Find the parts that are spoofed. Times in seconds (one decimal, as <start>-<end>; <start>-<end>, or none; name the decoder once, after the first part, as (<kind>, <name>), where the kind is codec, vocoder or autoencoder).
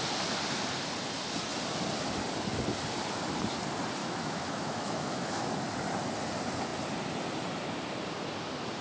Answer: 4.0-5.5 (autoencoder, DAC-VAE)